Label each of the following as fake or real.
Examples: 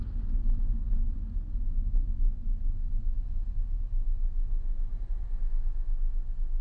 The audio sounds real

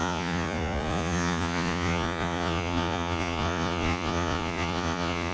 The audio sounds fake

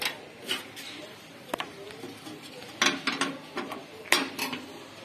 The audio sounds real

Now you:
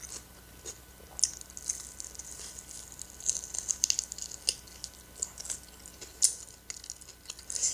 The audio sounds real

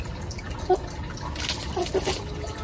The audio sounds real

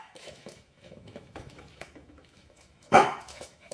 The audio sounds fake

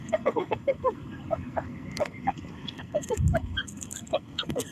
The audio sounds fake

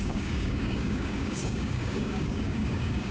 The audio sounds fake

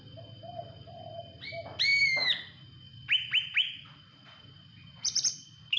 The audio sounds real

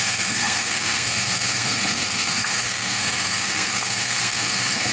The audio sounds fake